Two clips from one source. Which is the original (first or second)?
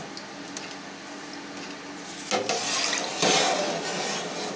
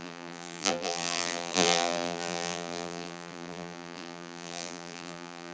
first